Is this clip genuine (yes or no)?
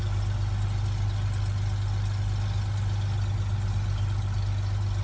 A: yes